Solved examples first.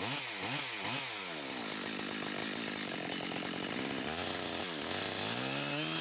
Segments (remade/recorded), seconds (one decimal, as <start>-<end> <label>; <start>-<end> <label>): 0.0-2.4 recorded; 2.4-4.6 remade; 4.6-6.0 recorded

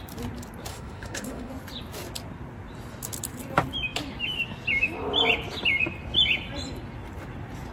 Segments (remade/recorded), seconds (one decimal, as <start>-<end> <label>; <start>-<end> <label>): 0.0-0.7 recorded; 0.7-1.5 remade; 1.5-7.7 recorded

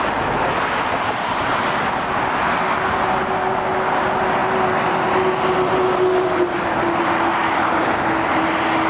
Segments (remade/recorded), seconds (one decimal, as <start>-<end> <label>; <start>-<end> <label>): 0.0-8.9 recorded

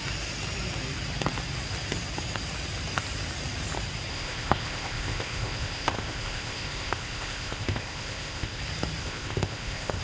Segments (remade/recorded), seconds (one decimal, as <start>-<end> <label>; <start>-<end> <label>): 0.0-4.1 recorded; 4.1-8.6 remade; 8.6-9.0 recorded; 9.0-10.0 remade